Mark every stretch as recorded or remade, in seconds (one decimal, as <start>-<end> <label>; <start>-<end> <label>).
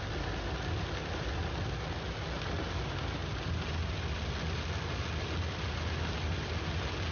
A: 0.0-7.1 recorded